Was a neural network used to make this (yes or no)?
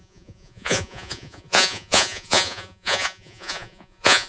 yes